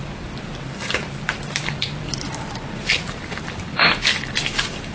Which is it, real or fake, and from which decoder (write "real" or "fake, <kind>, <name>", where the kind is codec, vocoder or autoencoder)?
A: fake, vocoder, BigVGAN v2